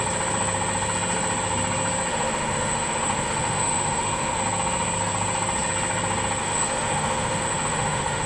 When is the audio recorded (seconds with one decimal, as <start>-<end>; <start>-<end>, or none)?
0.0-2.1; 4.4-6.4